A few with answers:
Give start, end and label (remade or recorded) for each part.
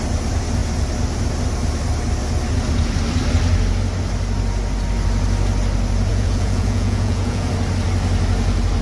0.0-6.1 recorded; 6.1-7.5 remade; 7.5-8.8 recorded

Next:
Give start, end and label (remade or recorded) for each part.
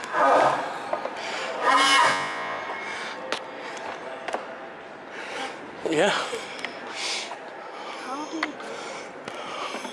0.0-2.1 recorded; 2.1-2.6 remade; 2.6-9.9 recorded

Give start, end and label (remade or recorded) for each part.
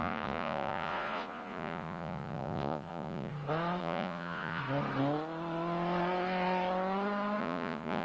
0.0-3.3 remade; 3.3-3.8 recorded; 3.8-4.6 remade; 4.6-7.4 recorded; 7.4-8.0 remade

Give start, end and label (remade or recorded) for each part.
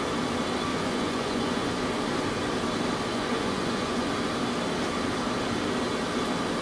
0.0-0.7 recorded; 0.7-1.7 remade; 1.7-3.1 recorded; 3.1-4.1 remade; 4.1-6.6 recorded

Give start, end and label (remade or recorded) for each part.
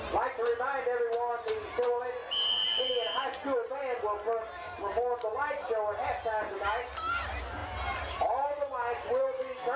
0.0-9.8 recorded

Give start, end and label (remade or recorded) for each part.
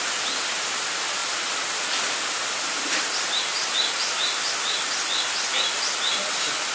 0.0-6.7 recorded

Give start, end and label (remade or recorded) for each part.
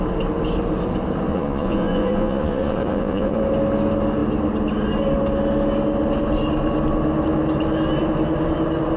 0.0-1.3 recorded; 1.3-3.4 remade; 3.4-9.0 recorded